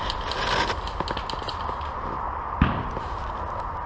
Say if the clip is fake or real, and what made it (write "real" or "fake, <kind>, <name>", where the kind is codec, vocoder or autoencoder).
real